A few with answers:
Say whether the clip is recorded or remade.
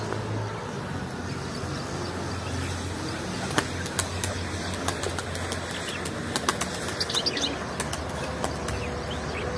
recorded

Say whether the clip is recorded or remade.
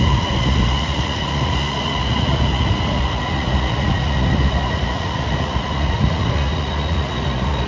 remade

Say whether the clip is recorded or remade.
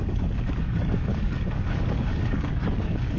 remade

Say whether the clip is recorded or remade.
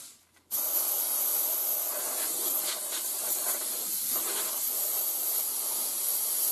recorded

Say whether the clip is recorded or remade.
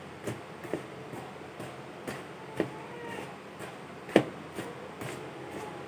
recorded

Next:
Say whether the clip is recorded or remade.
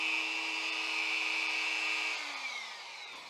remade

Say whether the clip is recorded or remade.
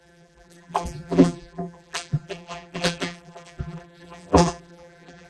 remade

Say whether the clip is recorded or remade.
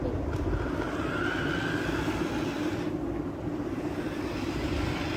recorded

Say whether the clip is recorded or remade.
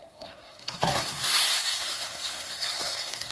remade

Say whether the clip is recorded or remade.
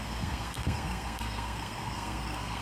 remade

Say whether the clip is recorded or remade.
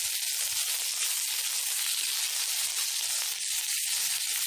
recorded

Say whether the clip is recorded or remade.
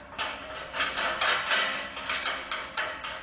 recorded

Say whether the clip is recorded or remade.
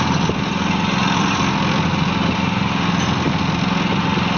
recorded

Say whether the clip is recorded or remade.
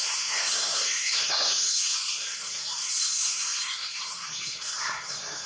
remade